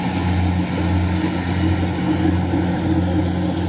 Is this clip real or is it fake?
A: real